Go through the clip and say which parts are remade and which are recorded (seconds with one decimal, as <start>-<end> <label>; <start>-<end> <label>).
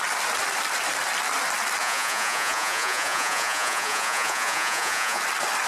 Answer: 0.0-1.8 recorded; 1.8-5.2 remade; 5.2-5.7 recorded